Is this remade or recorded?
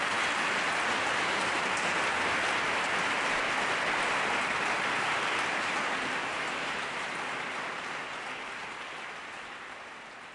recorded